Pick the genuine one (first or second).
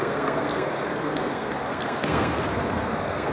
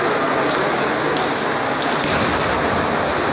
second